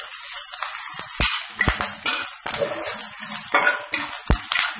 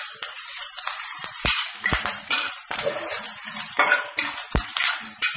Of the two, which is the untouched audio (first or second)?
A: first